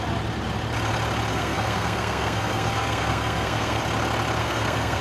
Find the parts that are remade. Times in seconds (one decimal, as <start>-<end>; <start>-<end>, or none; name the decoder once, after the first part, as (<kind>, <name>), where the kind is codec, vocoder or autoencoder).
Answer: 1.3-3.8 (codec, SNAC); 4.4-5.0